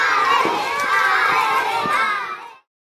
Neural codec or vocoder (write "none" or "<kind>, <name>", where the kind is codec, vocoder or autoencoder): none